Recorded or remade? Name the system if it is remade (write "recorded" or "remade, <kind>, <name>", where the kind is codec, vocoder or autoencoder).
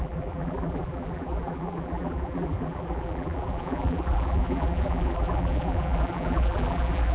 remade, vocoder, BigVGAN v2